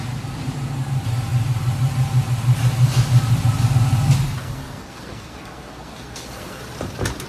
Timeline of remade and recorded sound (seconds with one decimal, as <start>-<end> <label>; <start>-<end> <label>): 0.0-4.4 recorded; 4.4-6.6 remade; 6.6-7.3 recorded